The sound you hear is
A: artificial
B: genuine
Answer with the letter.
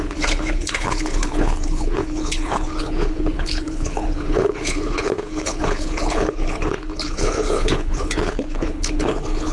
A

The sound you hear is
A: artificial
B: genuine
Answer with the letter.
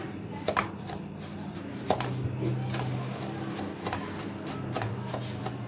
B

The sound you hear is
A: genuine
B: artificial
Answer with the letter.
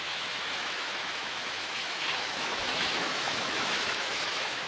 B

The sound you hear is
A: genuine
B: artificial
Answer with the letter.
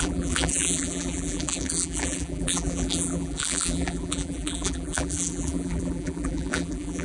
B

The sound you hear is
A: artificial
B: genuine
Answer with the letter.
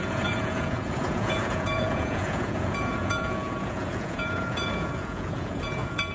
A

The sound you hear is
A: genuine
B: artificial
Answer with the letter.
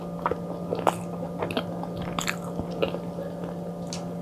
A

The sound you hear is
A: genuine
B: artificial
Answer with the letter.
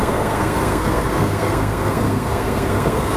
B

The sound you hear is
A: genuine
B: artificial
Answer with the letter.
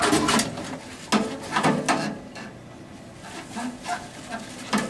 A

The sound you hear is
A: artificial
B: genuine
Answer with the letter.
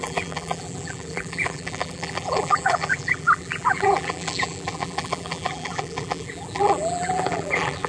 A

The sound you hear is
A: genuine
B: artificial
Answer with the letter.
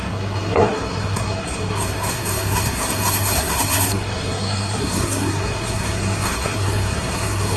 B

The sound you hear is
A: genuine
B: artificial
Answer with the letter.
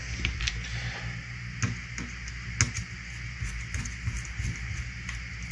A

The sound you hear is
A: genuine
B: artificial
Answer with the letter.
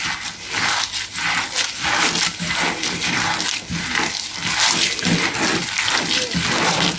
A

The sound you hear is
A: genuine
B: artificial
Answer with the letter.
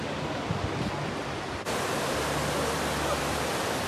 A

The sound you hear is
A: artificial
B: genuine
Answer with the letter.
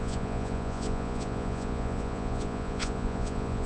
A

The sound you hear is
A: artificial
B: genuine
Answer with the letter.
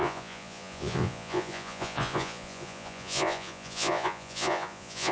A